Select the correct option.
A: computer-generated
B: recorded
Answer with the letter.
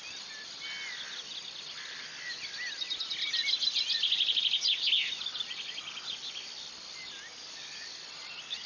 B